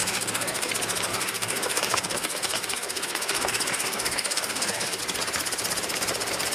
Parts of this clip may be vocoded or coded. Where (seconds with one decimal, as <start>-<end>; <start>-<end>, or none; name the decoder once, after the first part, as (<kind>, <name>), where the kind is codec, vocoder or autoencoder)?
0.0-0.7 (codec, DAC); 1.1-5.0